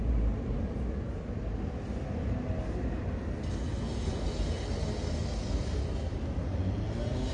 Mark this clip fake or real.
real